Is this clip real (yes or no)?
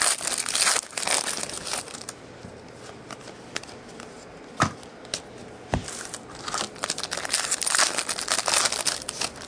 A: yes